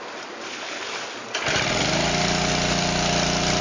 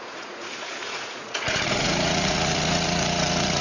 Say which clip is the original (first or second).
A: first